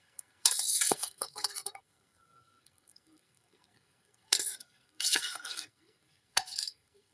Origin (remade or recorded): remade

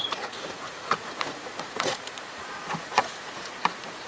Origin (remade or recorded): remade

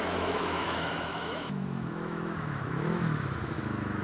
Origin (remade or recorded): remade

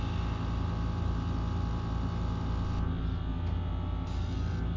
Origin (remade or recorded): recorded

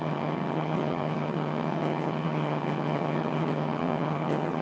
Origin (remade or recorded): remade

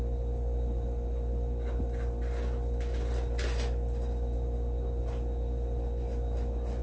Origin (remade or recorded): recorded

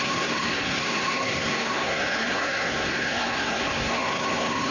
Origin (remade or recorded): remade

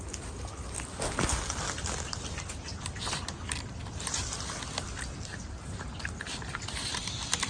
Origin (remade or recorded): recorded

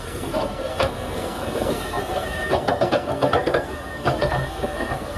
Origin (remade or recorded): remade